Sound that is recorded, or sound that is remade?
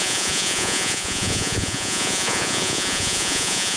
remade